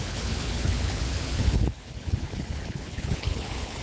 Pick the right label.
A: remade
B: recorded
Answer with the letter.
A